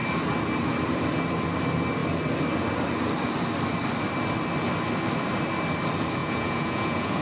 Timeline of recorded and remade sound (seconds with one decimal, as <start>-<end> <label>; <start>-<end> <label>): 0.0-6.2 recorded; 6.2-7.2 remade